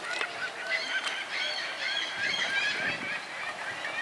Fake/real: real